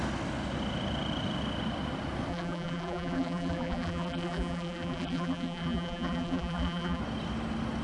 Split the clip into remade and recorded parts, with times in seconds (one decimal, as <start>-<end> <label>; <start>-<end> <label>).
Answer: 0.0-2.3 recorded; 2.3-7.0 remade; 7.0-7.8 recorded